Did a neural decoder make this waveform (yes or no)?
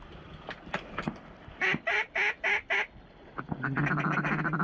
no